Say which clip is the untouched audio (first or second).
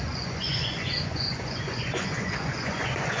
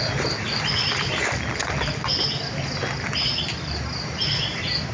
second